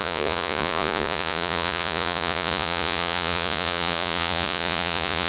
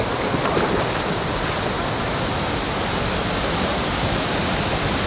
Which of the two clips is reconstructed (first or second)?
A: first